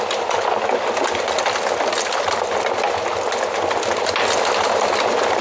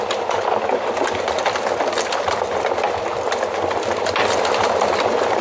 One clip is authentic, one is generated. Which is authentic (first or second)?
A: first